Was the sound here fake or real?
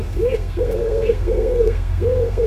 fake